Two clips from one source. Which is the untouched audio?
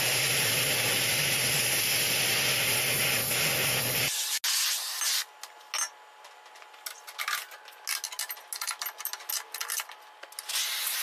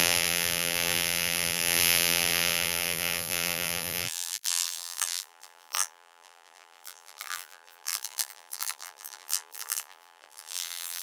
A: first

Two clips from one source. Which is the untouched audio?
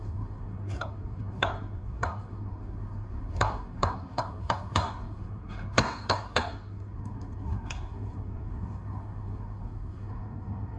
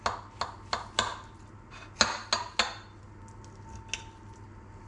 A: second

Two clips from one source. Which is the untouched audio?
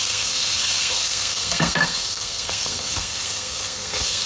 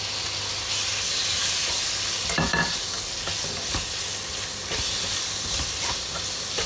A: second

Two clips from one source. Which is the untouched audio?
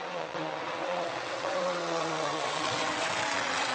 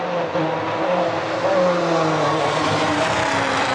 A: second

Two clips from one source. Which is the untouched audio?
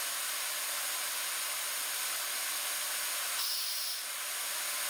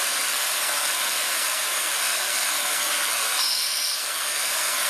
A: first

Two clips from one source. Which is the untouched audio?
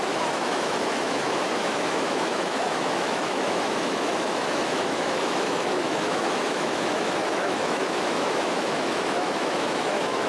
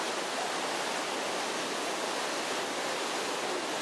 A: second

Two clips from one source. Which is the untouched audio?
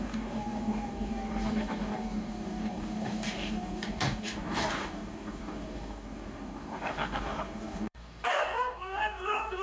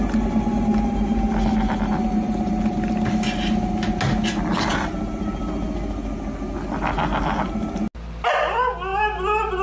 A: second